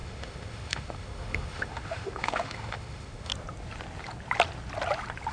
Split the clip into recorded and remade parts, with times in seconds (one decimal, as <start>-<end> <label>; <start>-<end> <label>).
0.0-3.3 remade; 3.3-5.3 recorded